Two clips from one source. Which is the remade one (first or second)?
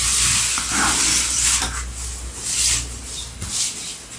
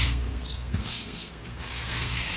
second